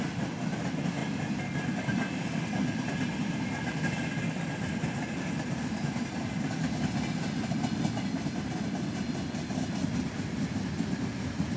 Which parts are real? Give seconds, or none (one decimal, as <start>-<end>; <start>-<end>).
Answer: 0.0-11.6